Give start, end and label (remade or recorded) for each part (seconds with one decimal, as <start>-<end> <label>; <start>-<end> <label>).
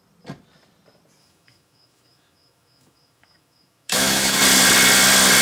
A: 0.0-1.2 recorded; 1.2-4.4 remade; 4.4-5.4 recorded